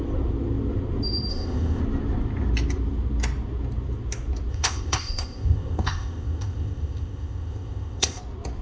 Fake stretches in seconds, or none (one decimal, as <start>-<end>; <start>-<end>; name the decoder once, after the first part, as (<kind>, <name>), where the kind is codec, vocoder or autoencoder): 1.3-1.8 (codec, ZipCodec); 4.5-8.2